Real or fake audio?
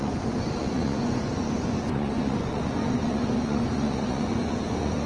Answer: fake